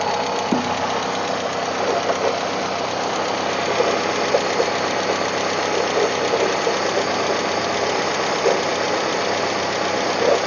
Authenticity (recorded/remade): recorded